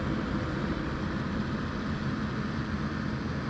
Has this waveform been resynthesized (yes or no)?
no